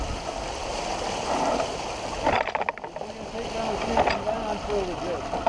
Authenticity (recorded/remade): recorded